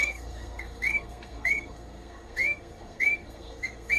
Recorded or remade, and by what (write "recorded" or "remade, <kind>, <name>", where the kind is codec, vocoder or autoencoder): remade, codec, SNAC